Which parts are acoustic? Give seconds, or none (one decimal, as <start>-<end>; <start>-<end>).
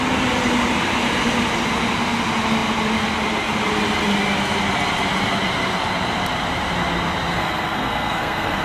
0.0-7.3